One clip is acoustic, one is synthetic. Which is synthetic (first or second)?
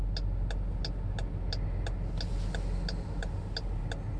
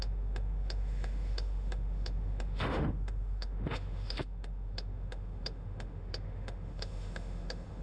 second